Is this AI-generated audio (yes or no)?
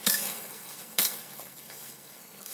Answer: yes